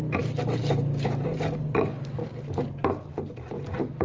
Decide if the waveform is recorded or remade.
recorded